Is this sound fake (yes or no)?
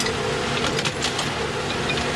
no